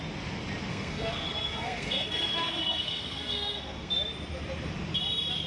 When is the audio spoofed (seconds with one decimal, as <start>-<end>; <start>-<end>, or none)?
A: 0.7-3.9